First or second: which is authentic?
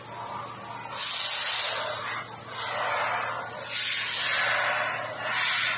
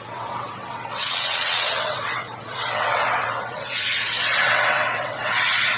first